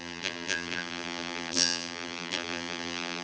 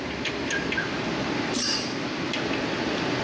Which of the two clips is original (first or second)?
second